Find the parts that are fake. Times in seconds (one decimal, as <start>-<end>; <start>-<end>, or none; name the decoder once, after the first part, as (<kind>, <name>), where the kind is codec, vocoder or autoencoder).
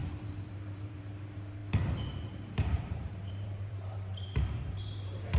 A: 0.0-5.4 (vocoder, BigVGAN v2)